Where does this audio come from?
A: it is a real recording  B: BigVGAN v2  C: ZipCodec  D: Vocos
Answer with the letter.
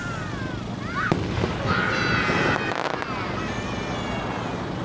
A